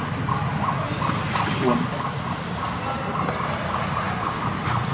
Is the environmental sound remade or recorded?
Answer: recorded